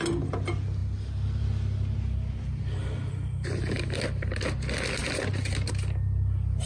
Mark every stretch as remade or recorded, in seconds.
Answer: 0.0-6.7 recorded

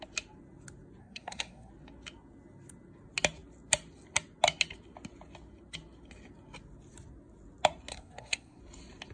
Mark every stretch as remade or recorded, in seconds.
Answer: 0.0-1.0 recorded; 1.0-1.7 remade; 1.7-7.9 recorded; 7.9-8.6 remade; 8.6-9.1 recorded

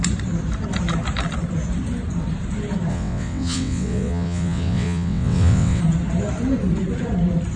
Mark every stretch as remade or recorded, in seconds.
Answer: 0.0-2.9 recorded; 2.9-5.8 remade; 5.8-7.6 recorded

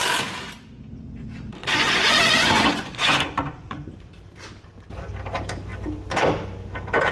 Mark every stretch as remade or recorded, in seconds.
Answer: 0.0-1.6 recorded; 1.6-4.1 remade; 4.1-7.1 recorded

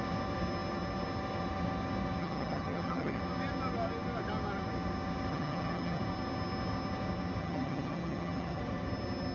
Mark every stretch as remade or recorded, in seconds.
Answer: 0.0-2.2 recorded; 2.2-3.2 remade; 3.2-5.3 recorded; 5.3-6.0 remade; 6.0-7.4 recorded; 7.4-8.6 remade; 8.6-9.3 recorded

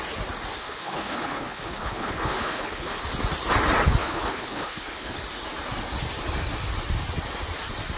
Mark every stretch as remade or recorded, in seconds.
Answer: 0.0-0.6 recorded; 0.6-3.0 remade; 3.0-4.0 recorded; 4.0-5.2 remade; 5.2-8.0 recorded